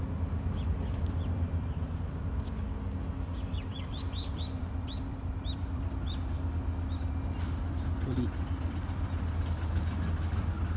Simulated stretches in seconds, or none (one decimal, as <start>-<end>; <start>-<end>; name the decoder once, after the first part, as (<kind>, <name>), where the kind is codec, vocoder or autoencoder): 3.7-5.8 (vocoder, BigVGAN v2)